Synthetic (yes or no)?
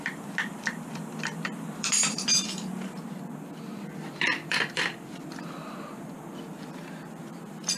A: yes